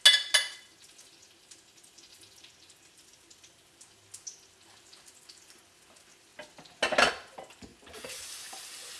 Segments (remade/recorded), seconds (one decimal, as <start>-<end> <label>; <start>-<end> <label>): 0.0-7.7 recorded; 7.7-8.6 remade; 8.6-9.0 recorded